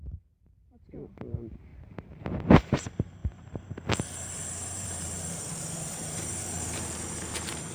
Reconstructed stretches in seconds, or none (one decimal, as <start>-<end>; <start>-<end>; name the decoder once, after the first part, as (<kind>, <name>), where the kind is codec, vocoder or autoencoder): 0.0-7.7 (vocoder, BigVGAN v2)